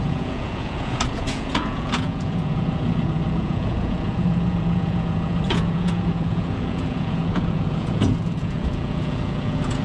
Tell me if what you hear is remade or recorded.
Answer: remade